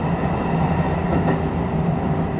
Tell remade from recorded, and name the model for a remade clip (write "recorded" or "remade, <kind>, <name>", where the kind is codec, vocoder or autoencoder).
recorded